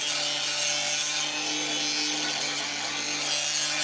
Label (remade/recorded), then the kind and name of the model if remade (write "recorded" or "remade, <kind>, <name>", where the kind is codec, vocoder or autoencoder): recorded